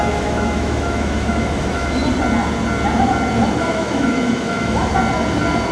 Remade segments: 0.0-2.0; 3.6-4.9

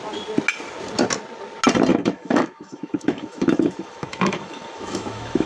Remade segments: 1.9-5.5